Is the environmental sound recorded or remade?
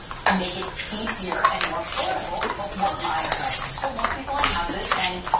recorded